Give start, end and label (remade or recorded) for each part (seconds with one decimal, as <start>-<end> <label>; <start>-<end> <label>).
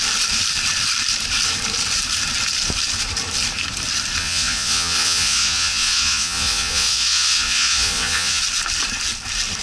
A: 0.0-4.2 recorded; 4.2-8.4 remade; 8.4-9.6 recorded